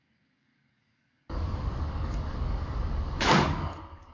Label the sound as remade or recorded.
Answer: remade